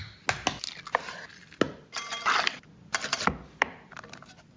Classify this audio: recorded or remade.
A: recorded